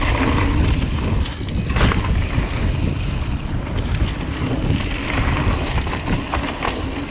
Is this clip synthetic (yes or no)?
no